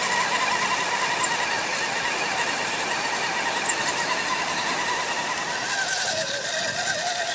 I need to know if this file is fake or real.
real